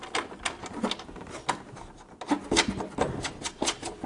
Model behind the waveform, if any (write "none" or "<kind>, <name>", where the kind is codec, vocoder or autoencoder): none